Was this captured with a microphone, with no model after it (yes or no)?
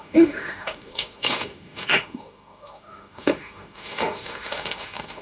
no